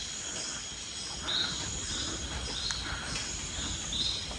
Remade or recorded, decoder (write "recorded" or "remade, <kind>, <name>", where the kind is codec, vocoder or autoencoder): recorded